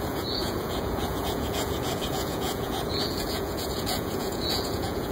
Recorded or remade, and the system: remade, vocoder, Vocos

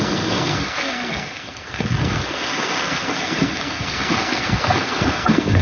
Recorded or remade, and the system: remade, codec, SNAC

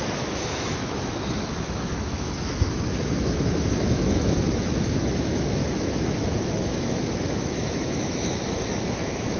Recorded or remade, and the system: remade, autoencoder, DAC-VAE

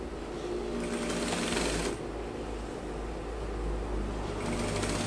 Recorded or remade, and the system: recorded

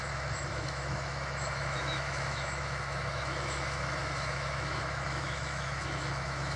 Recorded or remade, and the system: remade, autoencoder, DAC-VAE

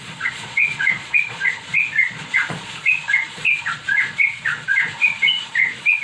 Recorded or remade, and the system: remade, vocoder, Vocos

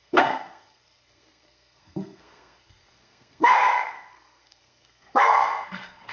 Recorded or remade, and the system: remade, codec, SNAC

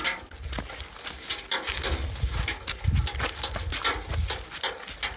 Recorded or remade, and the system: recorded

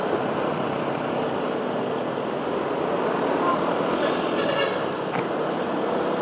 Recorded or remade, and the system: recorded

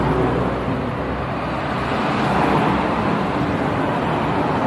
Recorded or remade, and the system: recorded